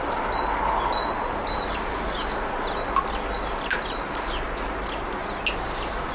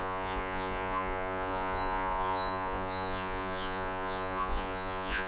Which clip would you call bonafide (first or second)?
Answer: first